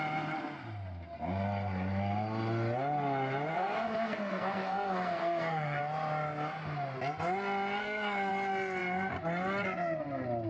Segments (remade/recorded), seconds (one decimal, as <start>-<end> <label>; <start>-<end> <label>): 0.0-3.5 recorded; 3.5-5.8 remade; 5.8-7.8 recorded; 7.8-8.3 remade; 8.3-10.5 recorded